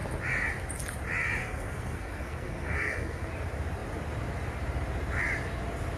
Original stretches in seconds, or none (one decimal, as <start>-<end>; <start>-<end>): 0.0-1.4; 3.3-6.0